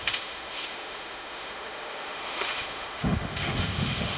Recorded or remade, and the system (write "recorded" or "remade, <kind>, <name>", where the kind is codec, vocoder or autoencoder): remade, autoencoder, DAC-VAE